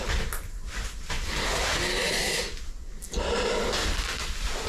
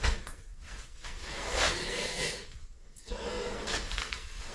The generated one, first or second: second